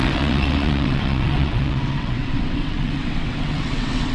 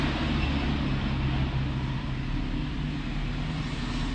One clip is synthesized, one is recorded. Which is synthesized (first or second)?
first